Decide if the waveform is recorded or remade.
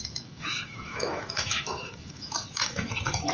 remade